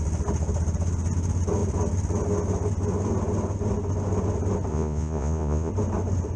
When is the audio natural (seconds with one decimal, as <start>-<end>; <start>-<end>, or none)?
0.0-4.7; 5.7-6.4